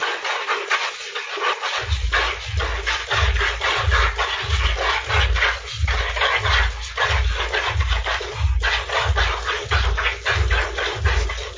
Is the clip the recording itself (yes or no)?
yes